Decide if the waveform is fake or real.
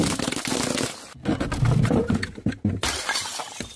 real